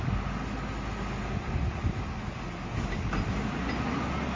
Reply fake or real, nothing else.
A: real